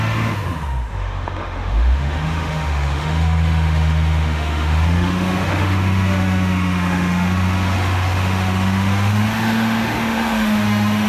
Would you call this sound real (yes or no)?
no